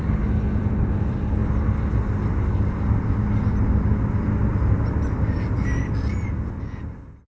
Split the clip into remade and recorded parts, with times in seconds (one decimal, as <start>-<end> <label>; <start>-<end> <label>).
0.0-1.4 remade; 1.4-2.6 recorded; 2.6-7.3 remade